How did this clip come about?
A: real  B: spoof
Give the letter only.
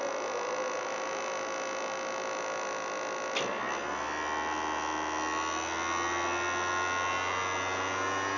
A